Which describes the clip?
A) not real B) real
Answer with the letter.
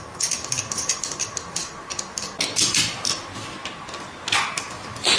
B